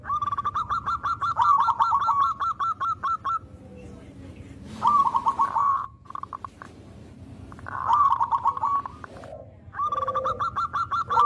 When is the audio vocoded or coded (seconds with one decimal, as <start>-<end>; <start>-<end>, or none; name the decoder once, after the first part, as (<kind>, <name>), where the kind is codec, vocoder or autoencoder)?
5.6-6.1 (vocoder, Vocos)